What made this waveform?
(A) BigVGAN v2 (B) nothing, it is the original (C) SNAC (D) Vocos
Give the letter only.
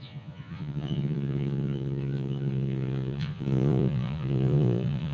D